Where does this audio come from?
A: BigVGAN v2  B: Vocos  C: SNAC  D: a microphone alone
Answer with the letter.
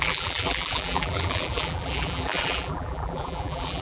A